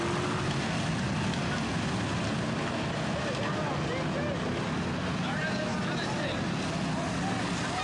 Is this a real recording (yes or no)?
yes